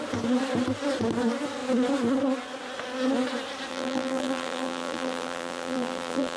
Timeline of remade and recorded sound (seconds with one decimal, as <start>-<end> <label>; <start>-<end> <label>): 0.0-3.7 recorded; 3.7-6.4 remade